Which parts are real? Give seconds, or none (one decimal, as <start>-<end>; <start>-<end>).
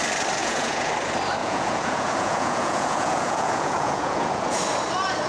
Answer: 0.0-0.4; 0.9-1.4; 4.6-5.3